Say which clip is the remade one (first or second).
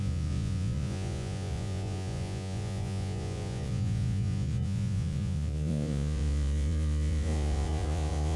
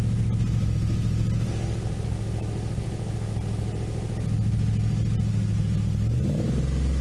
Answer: first